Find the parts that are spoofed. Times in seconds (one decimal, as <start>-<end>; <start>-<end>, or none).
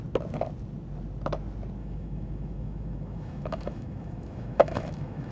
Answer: 1.8-5.3